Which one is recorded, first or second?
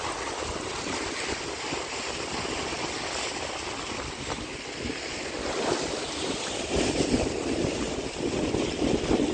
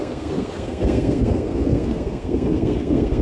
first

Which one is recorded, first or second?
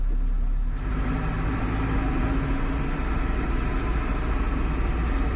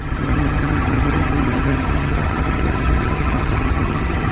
first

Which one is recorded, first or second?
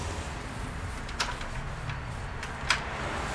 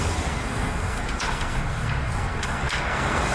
first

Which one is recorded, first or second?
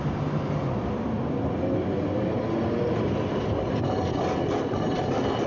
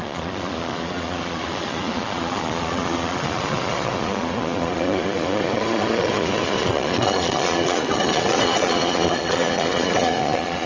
first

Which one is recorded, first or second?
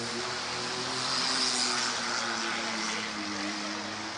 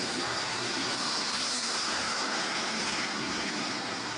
first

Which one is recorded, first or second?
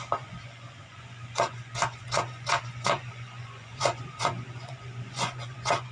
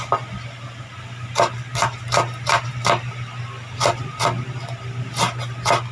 second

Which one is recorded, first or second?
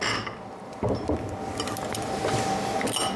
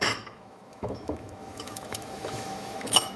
first